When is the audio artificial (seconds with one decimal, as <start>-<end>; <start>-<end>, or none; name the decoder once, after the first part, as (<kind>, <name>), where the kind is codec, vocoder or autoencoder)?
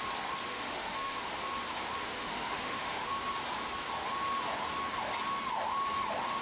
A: 0.5-1.3 (autoencoder, DAC-VAE); 2.0-3.1